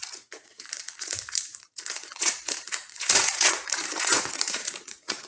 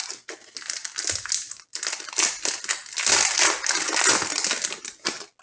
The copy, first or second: first